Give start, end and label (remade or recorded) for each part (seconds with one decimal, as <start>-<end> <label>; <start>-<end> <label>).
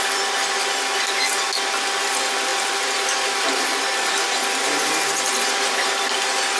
0.0-6.6 recorded